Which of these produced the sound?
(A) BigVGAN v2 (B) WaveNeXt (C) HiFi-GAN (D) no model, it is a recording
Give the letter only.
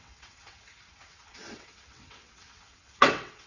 B